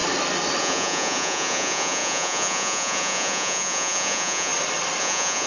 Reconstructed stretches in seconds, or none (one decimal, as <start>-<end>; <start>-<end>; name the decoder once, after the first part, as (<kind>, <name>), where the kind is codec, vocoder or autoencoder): 0.6-4.5 (vocoder, Vocos); 5.0-5.5